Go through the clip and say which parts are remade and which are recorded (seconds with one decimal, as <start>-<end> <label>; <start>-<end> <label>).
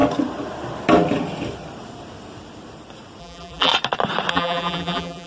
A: 0.0-3.2 recorded; 3.2-3.7 remade; 3.7-4.3 recorded; 4.3-5.3 remade